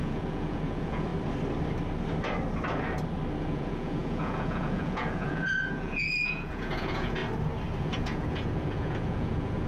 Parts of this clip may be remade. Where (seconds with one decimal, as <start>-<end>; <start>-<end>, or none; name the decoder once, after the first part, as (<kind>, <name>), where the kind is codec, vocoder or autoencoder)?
0.0-1.1 (vocoder, Vocos); 3.4-7.2; 7.8-9.7